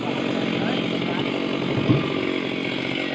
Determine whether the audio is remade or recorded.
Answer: recorded